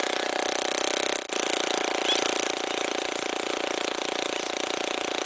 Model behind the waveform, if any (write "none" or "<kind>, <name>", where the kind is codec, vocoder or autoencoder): none